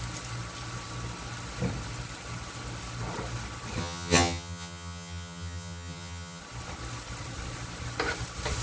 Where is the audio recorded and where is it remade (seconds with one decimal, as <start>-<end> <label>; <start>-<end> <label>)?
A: 0.0-3.8 recorded; 3.8-6.4 remade; 6.4-8.6 recorded